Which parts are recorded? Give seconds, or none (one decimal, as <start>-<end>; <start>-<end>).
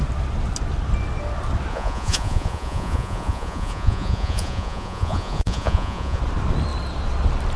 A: 0.0-1.7; 6.2-7.6